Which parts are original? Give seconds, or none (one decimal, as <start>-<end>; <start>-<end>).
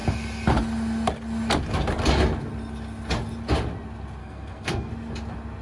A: 0.0-4.2; 4.9-5.6